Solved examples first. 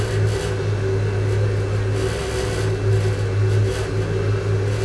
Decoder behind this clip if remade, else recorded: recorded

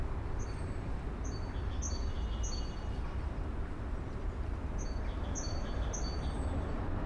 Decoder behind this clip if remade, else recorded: recorded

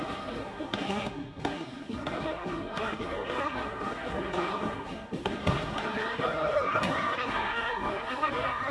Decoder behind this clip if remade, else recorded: remade, codec, SNAC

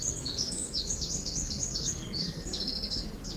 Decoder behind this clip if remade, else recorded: remade, codec, SNAC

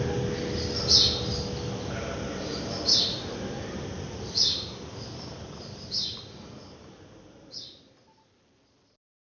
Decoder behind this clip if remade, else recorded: recorded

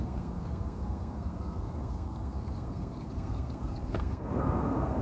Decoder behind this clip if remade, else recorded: remade, codec, SNAC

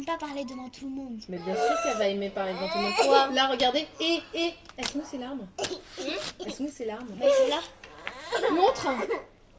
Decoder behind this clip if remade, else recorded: recorded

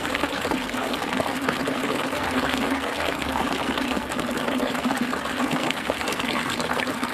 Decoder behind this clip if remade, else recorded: remade, codec, SNAC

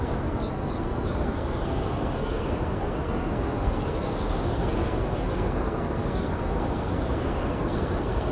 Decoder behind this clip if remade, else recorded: remade, codec, SNAC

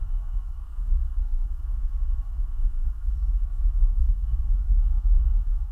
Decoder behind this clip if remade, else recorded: remade, codec, SNAC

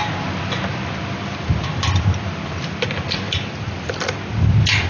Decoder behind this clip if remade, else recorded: recorded